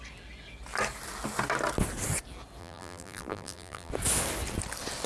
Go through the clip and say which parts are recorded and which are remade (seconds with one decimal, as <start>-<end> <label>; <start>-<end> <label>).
0.0-2.6 recorded; 2.6-3.9 remade; 3.9-5.1 recorded

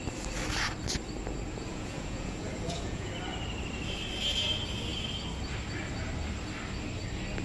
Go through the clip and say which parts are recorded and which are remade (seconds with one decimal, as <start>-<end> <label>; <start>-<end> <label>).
0.0-1.7 recorded; 1.7-3.1 remade; 3.1-7.4 recorded

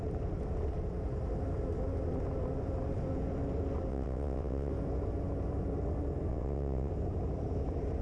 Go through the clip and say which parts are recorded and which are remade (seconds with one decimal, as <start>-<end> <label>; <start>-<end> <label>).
0.0-3.9 recorded; 3.9-4.7 remade; 4.7-6.3 recorded; 6.3-6.9 remade; 6.9-8.0 recorded